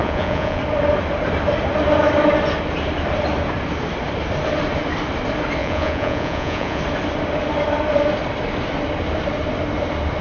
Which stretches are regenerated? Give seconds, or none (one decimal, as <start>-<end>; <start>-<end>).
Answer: 0.0-0.6; 5.6-6.8